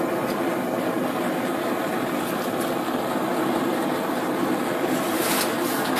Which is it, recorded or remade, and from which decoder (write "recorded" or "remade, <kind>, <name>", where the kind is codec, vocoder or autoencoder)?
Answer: recorded